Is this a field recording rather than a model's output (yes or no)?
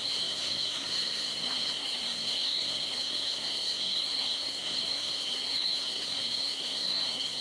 no